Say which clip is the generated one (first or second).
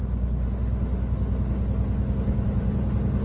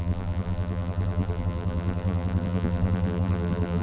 second